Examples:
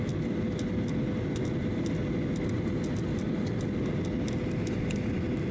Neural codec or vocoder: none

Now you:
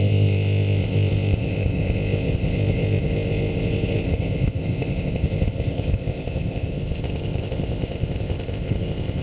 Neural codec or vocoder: codec, ZipCodec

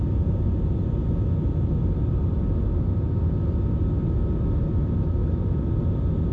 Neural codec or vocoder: none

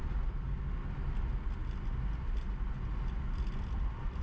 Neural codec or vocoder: none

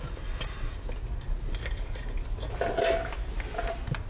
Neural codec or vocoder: none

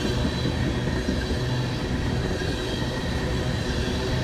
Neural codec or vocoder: none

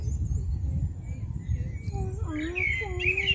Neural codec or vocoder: none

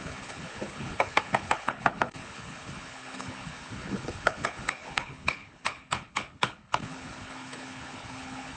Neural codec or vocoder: codec, HILCodec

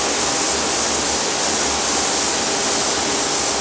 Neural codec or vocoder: none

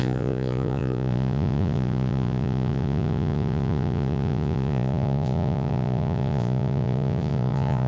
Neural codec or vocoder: vocoder, Vocos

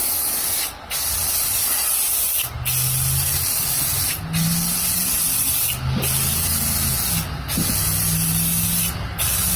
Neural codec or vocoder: none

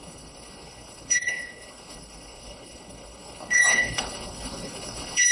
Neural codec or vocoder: codec, HILCodec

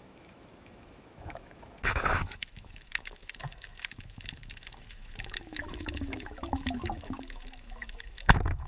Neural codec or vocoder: autoencoder, DAC-VAE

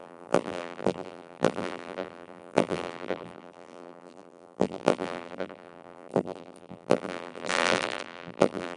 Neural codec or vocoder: vocoder, BigVGAN v2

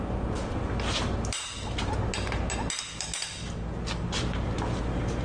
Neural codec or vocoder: none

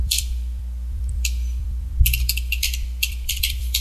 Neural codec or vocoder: vocoder, BigVGAN v2